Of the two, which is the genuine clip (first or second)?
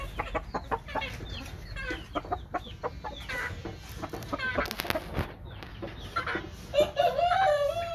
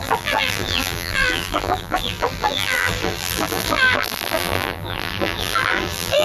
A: first